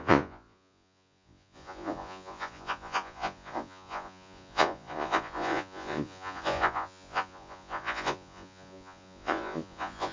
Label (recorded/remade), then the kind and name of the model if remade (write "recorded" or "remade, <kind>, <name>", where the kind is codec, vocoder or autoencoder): remade, vocoder, Vocos